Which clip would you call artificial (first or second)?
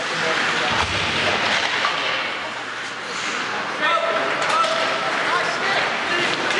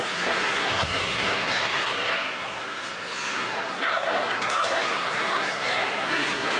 second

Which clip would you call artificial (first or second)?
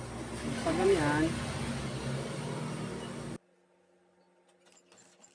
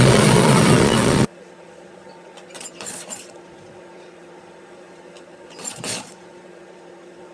second